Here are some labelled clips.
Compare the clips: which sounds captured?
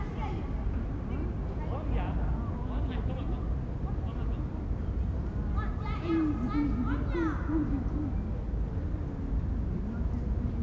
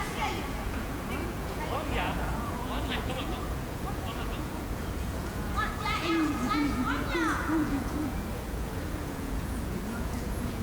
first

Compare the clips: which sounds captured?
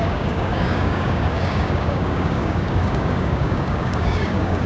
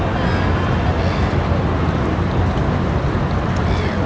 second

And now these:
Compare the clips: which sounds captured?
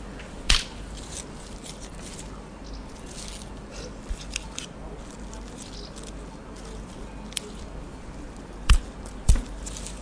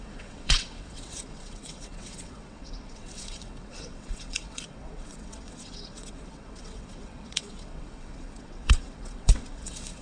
first